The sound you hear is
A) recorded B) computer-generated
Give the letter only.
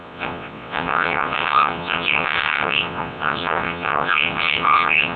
B